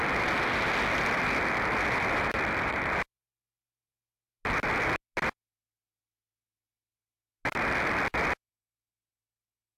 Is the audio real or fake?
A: real